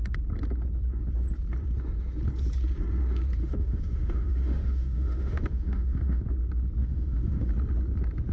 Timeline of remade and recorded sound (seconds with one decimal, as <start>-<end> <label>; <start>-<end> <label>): 0.0-3.4 recorded; 3.4-6.2 remade; 6.2-6.8 recorded; 6.8-7.5 remade; 7.5-8.3 recorded